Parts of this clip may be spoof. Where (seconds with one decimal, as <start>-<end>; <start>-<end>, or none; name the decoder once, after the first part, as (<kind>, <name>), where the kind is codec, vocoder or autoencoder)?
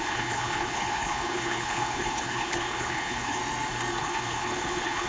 0.0-3.4 (codec, HILCodec); 4.0-5.1